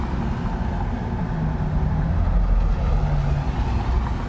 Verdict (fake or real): real